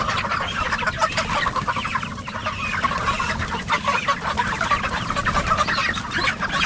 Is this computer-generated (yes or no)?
no